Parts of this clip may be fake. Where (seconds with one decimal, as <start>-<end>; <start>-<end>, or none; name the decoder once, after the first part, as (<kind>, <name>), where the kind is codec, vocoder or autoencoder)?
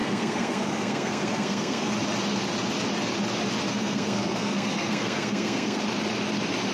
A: 0.0-1.9 (codec, SNAC); 3.7-5.8